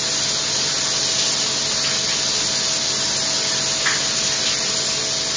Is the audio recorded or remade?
recorded